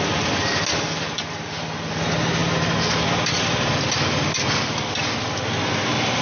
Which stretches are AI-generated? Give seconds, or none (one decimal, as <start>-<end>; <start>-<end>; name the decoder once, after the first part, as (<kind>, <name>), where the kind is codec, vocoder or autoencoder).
none